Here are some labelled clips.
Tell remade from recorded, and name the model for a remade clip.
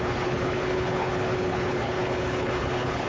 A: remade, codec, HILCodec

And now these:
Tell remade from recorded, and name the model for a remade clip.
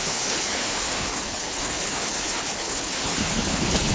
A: remade, codec, HILCodec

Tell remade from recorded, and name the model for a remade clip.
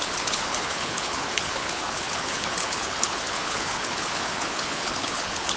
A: remade, codec, HILCodec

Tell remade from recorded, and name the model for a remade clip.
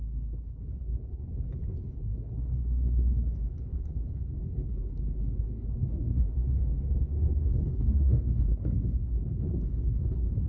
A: remade, codec, HILCodec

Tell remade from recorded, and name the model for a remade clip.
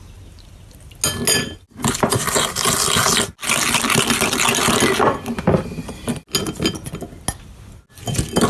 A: recorded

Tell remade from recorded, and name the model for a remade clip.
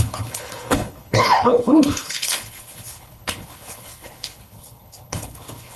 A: remade, codec, HILCodec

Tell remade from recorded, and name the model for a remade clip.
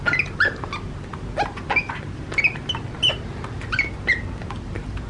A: recorded